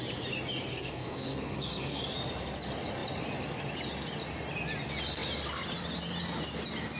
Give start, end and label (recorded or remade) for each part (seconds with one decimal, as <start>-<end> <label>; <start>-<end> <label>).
0.0-0.7 recorded; 0.7-2.0 remade; 2.0-7.0 recorded